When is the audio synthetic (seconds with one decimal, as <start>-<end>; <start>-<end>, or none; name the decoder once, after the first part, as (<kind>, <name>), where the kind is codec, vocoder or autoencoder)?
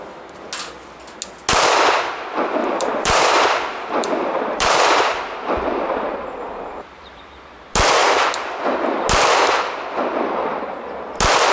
2.6-7.2 (vocoder, BigVGAN v2)